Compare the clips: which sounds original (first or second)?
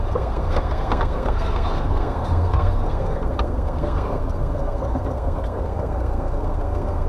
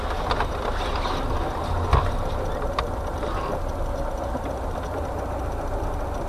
second